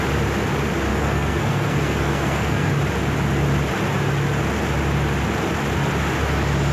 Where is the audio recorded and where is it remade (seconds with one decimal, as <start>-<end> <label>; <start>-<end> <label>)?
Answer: 0.0-0.9 recorded; 0.9-2.7 remade; 2.7-6.7 recorded